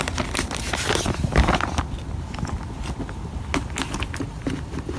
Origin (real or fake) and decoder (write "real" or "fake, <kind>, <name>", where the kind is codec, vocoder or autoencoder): real